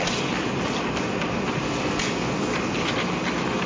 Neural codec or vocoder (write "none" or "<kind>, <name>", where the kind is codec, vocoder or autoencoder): none